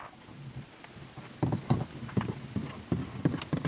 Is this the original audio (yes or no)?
yes